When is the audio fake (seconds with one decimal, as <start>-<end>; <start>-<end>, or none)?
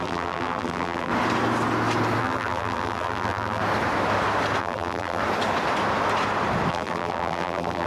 0.0-1.1; 2.2-3.6; 4.6-5.2; 6.7-7.9